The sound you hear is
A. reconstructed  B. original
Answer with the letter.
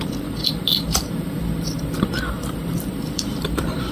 A